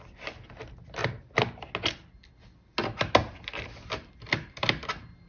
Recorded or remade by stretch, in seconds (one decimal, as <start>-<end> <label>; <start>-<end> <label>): 0.0-5.3 recorded